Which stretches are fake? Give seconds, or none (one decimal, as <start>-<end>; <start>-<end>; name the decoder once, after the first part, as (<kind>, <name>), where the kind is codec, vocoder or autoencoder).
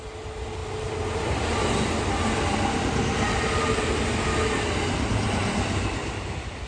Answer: none